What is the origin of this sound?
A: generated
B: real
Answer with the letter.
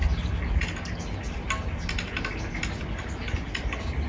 B